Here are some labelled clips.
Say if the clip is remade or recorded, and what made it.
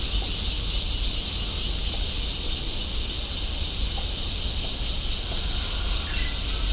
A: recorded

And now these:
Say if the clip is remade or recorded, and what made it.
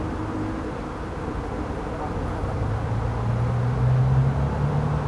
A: recorded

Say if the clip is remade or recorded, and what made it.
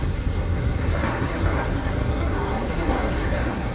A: remade, codec, SNAC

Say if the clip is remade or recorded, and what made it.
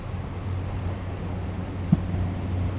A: recorded